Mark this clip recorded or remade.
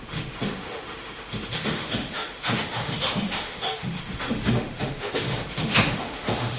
remade